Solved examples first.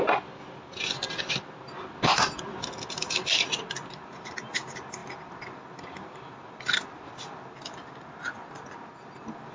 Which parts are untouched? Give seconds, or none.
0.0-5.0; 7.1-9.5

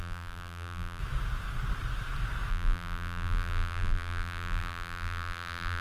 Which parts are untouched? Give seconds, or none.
1.0-2.5

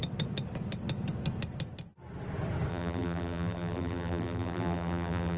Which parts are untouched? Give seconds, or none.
0.0-2.7

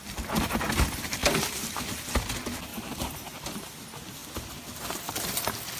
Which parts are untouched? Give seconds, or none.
0.0-1.2; 2.1-2.7; 3.8-5.8

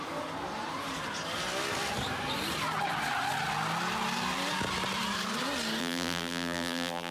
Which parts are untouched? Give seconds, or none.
0.0-5.8